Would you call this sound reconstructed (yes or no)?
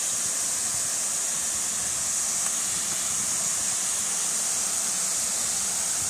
no